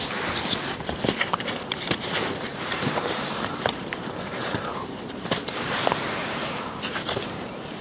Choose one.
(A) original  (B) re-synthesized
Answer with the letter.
B